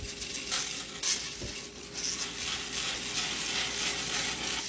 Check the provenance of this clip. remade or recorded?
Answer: recorded